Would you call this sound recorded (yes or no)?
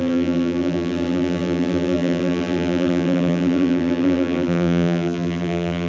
no